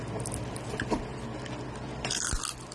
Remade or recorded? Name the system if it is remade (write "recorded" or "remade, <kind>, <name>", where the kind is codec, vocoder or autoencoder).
recorded